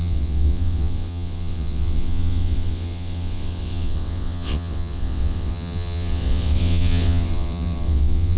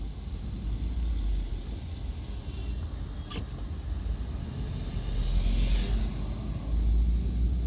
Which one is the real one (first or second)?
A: second